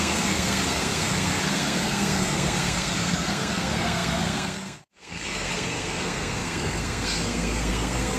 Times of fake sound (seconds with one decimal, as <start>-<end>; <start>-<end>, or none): 0.0-8.2